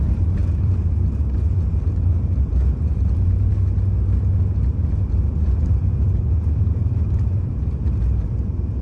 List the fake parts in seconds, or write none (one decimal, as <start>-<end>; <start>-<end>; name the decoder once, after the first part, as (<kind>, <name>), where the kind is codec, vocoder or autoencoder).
0.0-3.5 (vocoder, BigVGAN v2); 5.3-8.8